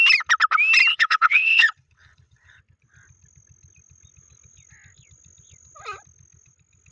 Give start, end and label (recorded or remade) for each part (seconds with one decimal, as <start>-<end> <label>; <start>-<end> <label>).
0.0-0.9 recorded; 0.9-2.6 remade; 2.6-6.9 recorded